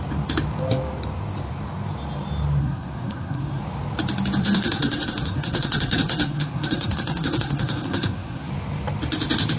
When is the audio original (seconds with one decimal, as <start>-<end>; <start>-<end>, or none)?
0.0-2.6; 3.6-4.4; 8.5-9.6